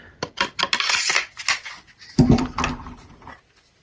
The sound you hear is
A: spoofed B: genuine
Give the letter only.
B